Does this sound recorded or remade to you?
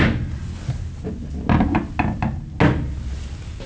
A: recorded